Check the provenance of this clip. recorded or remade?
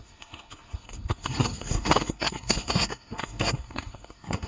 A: remade